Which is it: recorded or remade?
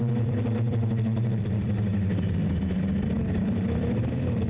remade